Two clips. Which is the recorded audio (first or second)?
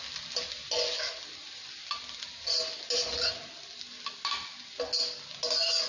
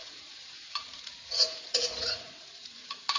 first